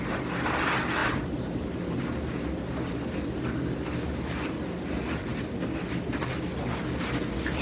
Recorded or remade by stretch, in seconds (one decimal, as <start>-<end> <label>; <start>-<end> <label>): 0.0-1.0 recorded; 1.0-2.0 remade; 2.0-7.6 recorded